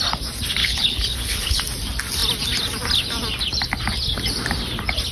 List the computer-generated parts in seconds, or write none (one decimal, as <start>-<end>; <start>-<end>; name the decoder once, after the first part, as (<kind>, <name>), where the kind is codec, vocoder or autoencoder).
0.6-1.6 (codec, HILCodec)